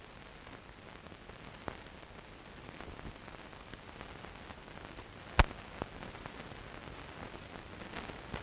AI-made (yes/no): no